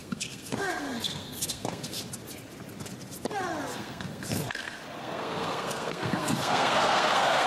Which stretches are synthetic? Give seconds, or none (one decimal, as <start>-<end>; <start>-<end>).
0.0-2.0; 3.7-7.5

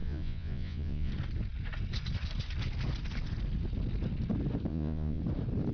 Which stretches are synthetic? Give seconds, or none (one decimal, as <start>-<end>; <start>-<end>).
0.0-1.1; 4.7-5.2

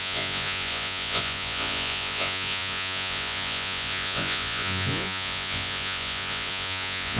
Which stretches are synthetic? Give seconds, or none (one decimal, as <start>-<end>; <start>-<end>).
0.0-7.2

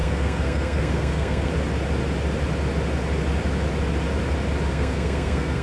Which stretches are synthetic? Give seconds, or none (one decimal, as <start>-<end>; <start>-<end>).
0.0-1.5; 4.7-5.6

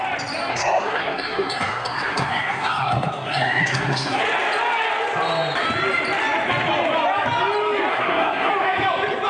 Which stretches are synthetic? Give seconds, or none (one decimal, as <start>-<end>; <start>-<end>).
0.5-4.2; 7.9-8.5

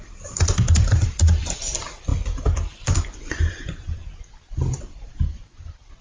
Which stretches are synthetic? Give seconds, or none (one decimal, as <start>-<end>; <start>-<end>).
0.0-6.0

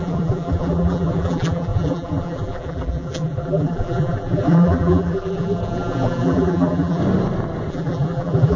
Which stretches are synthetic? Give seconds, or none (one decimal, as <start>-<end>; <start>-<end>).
0.0-7.0; 7.7-8.6